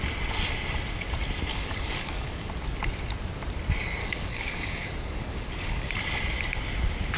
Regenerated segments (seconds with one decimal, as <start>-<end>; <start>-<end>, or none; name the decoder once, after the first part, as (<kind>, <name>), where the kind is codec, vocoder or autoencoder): 1.5-2.5 (codec, DAC); 4.0-5.9